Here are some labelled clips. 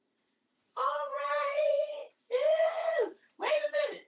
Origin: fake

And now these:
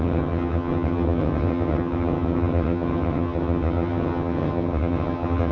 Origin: fake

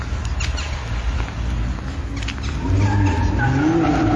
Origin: real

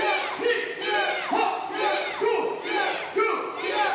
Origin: real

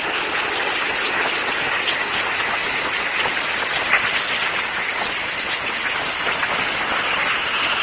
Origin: real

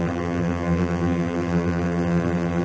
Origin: fake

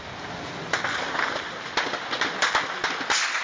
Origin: real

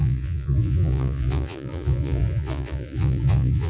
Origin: fake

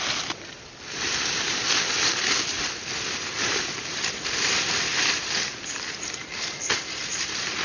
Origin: real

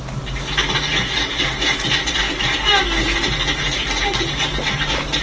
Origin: real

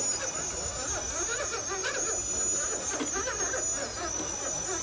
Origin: real